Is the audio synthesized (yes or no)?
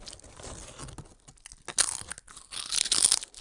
no